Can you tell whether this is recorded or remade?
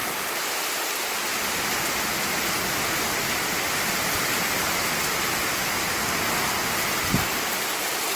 recorded